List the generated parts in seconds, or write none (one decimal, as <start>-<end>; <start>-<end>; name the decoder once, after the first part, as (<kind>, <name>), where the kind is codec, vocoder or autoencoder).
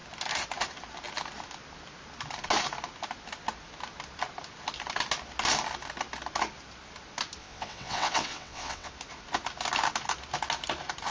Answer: 7.4-8.9 (vocoder, WaveNeXt)